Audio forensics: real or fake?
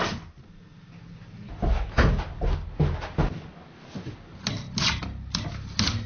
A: real